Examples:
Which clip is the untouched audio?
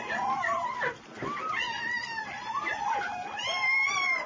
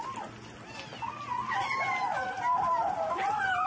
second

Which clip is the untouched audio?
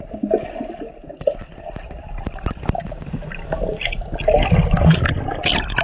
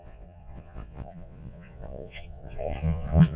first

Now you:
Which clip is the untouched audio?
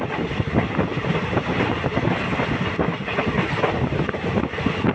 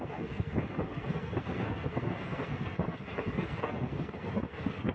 first